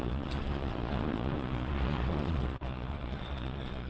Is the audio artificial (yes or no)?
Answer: yes